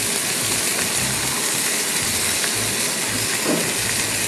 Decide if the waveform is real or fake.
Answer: real